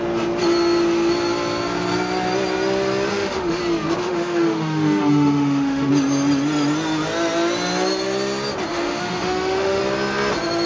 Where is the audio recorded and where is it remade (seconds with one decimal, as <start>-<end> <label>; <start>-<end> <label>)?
0.0-3.1 recorded; 3.1-3.6 remade; 3.6-4.0 recorded; 4.0-5.9 remade; 5.9-8.7 recorded; 8.7-9.8 remade; 9.8-10.7 recorded